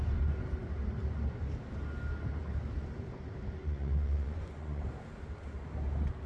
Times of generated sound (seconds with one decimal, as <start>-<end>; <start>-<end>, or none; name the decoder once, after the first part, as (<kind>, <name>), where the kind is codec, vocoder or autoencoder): 3.6-4.8 (vocoder, Vocos)